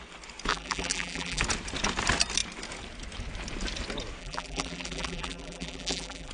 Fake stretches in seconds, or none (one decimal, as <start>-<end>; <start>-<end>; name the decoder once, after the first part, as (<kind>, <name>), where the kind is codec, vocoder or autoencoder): 0.5-1.4 (vocoder, BigVGAN v2); 4.2-6.3